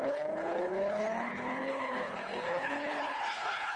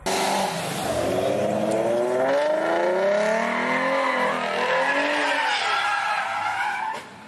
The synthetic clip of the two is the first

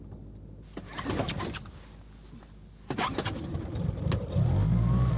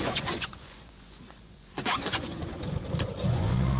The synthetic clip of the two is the second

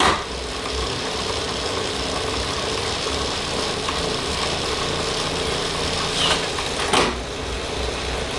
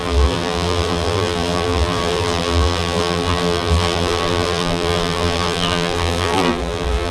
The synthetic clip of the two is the second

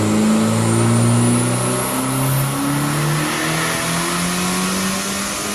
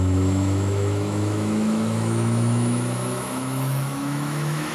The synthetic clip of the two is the second